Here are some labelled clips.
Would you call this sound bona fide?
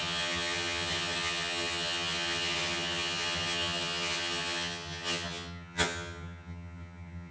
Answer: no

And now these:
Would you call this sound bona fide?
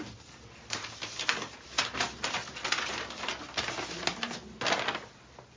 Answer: yes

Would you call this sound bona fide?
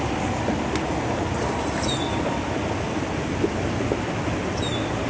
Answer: yes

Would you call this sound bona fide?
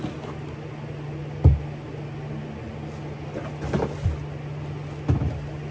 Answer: yes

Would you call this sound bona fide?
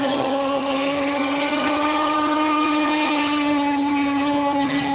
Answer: no